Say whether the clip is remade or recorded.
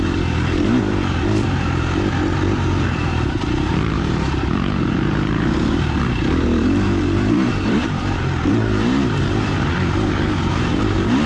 remade